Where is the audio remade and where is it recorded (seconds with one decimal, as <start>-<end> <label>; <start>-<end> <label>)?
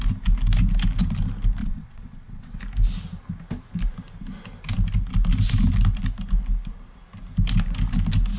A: 0.0-1.6 recorded; 1.6-2.6 remade; 2.6-8.4 recorded